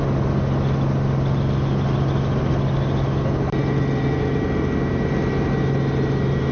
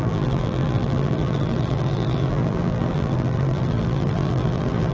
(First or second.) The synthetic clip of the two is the second